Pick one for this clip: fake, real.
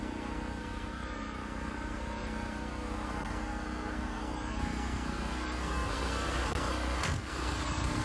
fake